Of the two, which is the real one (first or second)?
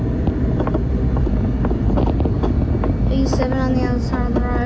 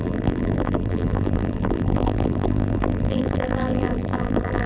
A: first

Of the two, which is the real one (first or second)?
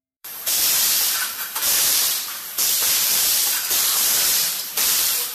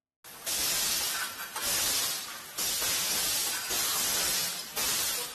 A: second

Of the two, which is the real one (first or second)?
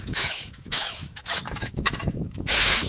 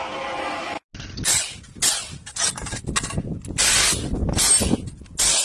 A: second